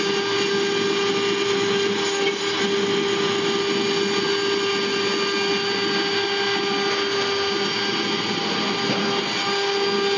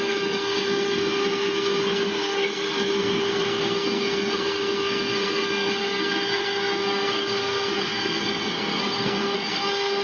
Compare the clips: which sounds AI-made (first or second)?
second